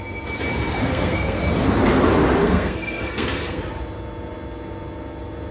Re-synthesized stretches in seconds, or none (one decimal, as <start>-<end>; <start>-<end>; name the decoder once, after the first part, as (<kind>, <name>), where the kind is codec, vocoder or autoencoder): 0.8-1.4 (codec, SNAC); 2.4-3.6